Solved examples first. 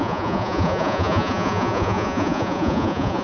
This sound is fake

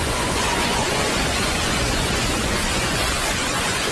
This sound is fake